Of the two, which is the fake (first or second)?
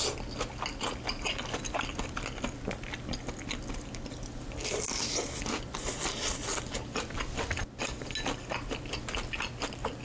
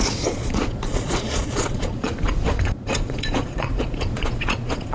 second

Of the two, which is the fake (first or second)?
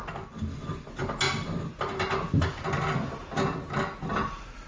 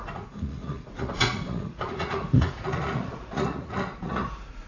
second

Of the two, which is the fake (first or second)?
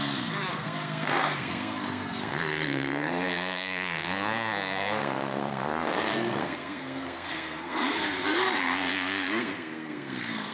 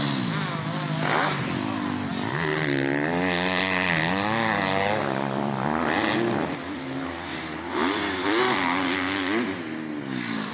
first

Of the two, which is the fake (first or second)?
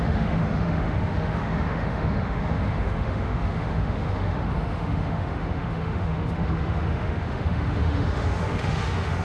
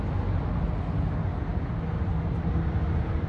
first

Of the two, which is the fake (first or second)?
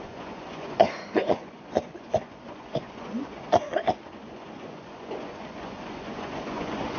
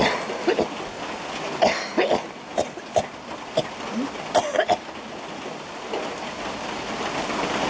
first